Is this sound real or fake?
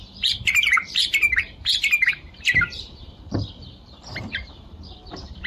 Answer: fake